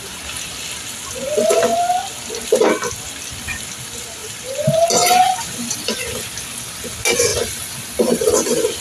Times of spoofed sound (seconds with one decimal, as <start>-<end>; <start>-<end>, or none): none